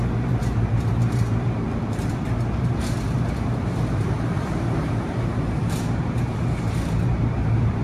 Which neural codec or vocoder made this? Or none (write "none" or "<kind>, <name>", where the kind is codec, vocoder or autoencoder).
vocoder, BigVGAN v2